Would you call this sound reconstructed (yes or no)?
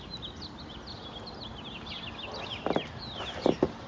no